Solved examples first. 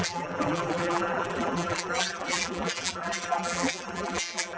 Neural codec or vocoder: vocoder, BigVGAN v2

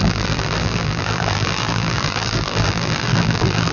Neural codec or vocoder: vocoder, BigVGAN v2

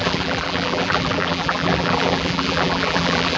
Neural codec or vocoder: vocoder, BigVGAN v2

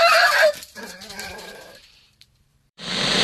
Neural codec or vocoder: vocoder, BigVGAN v2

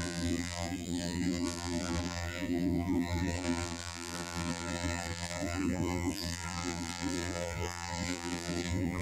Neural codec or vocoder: vocoder, BigVGAN v2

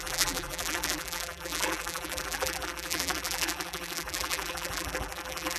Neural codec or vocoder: vocoder, BigVGAN v2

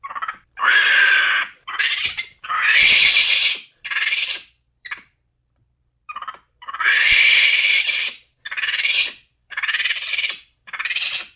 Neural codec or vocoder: vocoder, BigVGAN v2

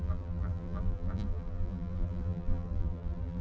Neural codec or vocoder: vocoder, BigVGAN v2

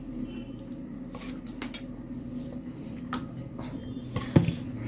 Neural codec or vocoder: none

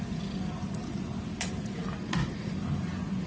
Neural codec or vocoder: none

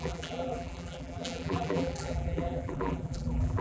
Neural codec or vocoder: vocoder, BigVGAN v2